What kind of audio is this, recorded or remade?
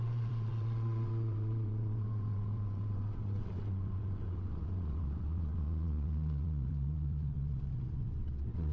remade